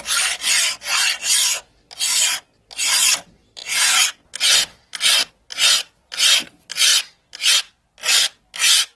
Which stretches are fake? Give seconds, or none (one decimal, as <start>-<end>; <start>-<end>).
none